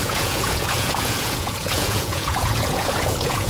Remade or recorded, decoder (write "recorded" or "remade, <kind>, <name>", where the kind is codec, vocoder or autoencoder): remade, vocoder, Vocos